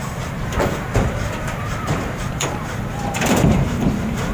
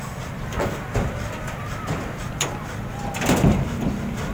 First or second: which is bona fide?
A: second